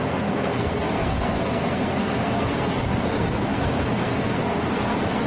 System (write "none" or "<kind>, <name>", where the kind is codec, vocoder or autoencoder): codec, SNAC